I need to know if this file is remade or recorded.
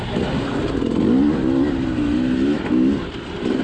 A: recorded